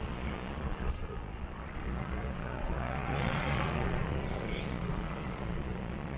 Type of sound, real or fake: fake